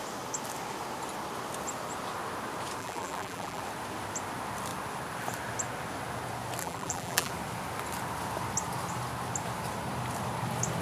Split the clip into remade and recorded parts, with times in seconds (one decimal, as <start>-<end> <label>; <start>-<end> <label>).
0.0-2.8 recorded; 2.8-3.6 remade; 3.6-6.6 recorded; 6.6-7.3 remade; 7.3-10.8 recorded